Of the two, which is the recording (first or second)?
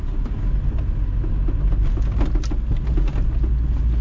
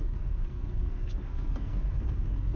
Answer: first